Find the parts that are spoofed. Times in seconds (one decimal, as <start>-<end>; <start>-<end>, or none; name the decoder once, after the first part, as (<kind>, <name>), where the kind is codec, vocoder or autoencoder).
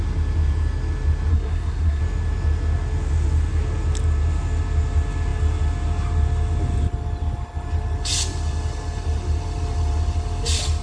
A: 1.3-2.0 (codec, SNAC)